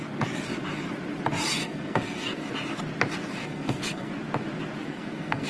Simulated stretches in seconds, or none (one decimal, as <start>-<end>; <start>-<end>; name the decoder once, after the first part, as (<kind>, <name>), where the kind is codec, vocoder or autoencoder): 1.6-2.5 (codec, SNAC); 3.4-4.1; 4.8-5.5

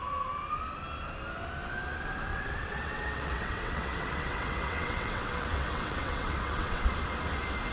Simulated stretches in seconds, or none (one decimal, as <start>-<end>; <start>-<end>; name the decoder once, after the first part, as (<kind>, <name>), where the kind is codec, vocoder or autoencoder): 2.3-6.9 (vocoder, WaveNeXt)

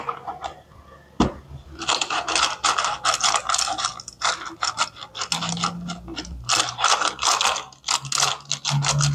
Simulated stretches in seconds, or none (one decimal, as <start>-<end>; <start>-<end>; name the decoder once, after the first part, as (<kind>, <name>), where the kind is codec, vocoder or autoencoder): none

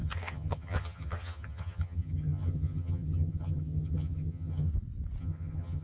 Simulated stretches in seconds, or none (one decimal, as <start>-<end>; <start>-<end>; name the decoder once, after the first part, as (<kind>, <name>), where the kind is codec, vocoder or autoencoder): 0.0-4.7 (vocoder, HiFi-GAN); 5.2-5.8